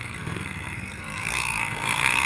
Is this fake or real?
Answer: fake